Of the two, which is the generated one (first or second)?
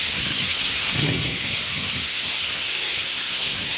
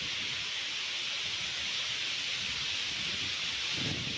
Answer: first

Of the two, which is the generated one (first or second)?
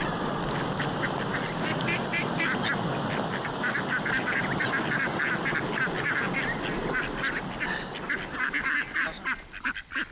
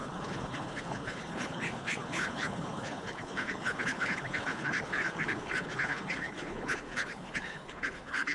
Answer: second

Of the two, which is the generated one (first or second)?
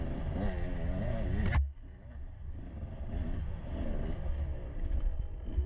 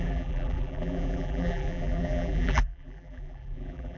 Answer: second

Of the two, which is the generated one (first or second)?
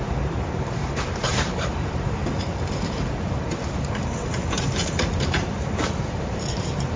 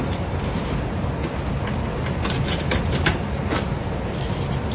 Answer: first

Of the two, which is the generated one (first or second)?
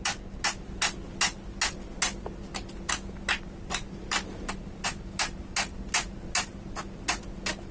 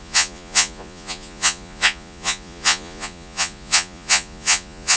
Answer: second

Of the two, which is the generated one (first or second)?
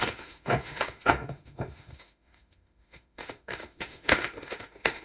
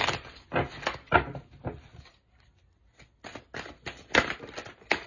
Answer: first